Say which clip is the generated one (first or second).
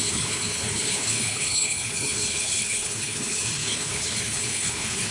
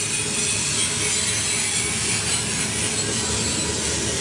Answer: first